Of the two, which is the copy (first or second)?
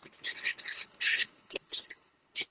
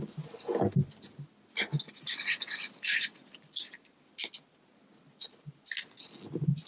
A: first